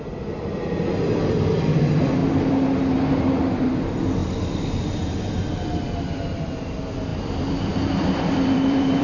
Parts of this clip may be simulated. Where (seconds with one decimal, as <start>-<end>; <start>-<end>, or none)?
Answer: 0.0-2.2; 3.5-4.2; 6.6-9.0